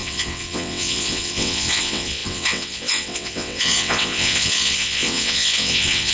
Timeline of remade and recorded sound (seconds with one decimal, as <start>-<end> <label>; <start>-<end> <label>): 0.0-6.1 remade